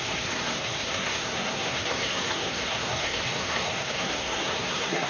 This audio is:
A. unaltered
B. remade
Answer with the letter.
B